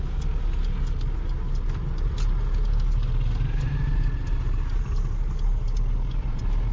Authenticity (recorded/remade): recorded